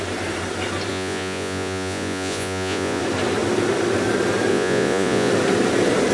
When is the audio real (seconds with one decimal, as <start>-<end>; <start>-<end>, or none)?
0.0-0.9; 3.0-4.5; 5.3-6.1